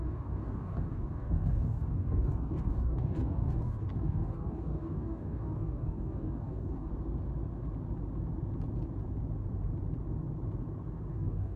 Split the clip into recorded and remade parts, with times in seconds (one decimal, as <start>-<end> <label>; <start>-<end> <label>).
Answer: 0.0-6.9 remade; 6.9-11.1 recorded; 11.1-11.6 remade